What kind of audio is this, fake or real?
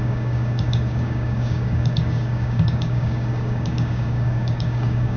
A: fake